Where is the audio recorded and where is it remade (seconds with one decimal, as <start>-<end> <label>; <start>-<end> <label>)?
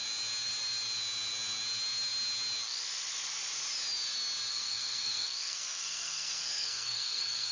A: 0.0-4.5 recorded; 4.5-7.5 remade